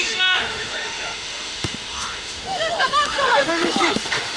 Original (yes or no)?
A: no